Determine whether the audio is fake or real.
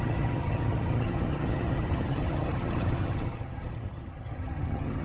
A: fake